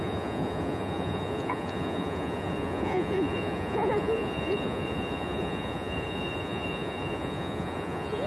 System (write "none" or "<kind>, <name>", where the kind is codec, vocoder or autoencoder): vocoder, Vocos